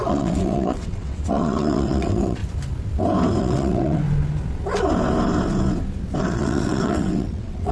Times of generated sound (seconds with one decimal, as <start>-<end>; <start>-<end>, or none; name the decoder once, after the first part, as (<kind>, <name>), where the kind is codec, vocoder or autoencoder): 0.0-2.4 (vocoder, WaveNeXt); 3.4-4.0; 6.2-7.7